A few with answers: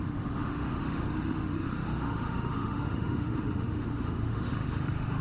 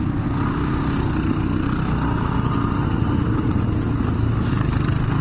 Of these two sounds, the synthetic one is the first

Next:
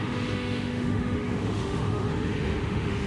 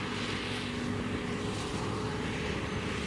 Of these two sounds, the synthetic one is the first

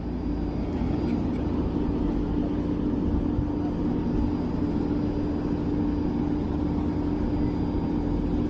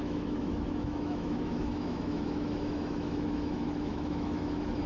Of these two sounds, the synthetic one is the second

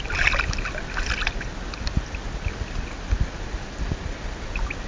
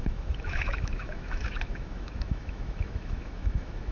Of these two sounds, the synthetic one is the second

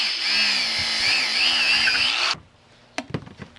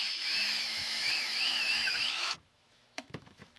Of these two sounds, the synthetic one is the second